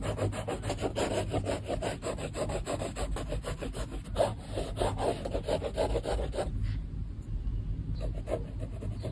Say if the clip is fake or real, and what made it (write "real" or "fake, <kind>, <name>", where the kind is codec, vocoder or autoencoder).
real